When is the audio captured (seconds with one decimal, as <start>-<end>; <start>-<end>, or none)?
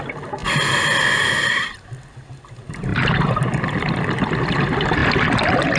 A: 0.0-5.8